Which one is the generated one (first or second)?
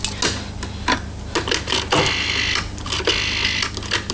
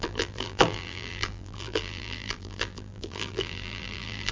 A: second